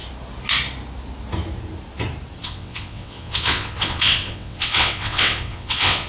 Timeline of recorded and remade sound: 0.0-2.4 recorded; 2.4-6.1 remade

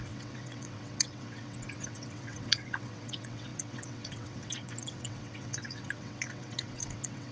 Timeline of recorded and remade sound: 0.0-7.3 remade